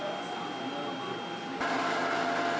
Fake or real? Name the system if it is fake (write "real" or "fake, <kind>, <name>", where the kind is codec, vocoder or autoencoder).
real